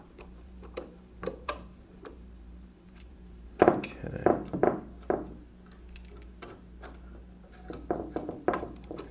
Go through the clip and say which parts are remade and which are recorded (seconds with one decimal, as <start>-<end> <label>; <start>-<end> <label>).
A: 0.0-4.2 remade; 4.2-8.6 recorded; 8.6-9.1 remade